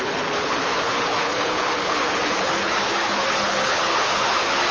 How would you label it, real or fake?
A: fake